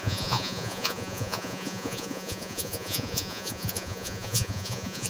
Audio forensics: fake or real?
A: fake